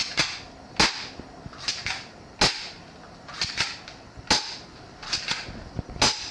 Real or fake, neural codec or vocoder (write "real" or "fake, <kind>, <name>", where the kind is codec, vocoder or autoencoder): real